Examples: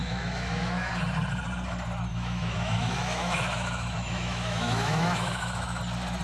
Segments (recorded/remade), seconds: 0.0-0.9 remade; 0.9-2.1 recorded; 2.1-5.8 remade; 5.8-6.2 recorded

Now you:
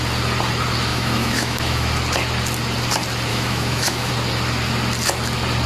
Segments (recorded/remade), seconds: 0.0-0.9 recorded; 0.9-1.9 remade; 1.9-3.3 recorded; 3.3-4.1 remade; 4.1-5.7 recorded